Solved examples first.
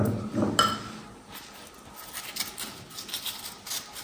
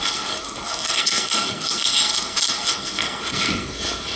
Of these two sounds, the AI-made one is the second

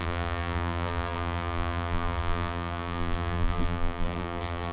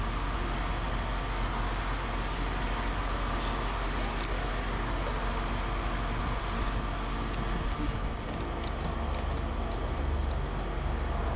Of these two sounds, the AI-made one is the first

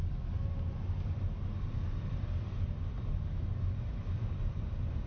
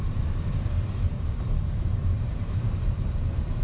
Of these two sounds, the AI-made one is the second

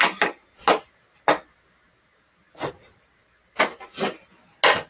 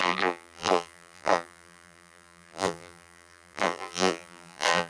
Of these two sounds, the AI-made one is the second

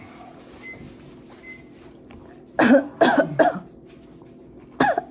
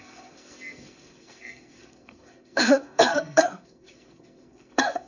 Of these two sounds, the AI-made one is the second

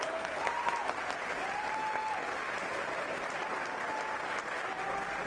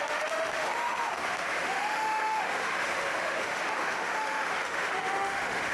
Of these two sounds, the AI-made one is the second